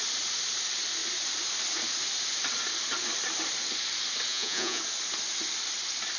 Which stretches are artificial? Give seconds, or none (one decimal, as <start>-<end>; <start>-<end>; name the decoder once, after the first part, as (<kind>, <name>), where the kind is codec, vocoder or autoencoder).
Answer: 4.3-4.8 (vocoder, Vocos)